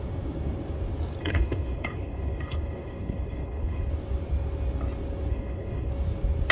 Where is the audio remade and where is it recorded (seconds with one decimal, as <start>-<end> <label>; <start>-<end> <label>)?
0.0-1.2 recorded; 1.2-3.9 remade; 3.9-5.3 recorded; 5.3-5.9 remade; 5.9-6.5 recorded